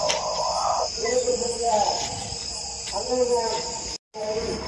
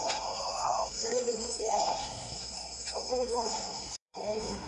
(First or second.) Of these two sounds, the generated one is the second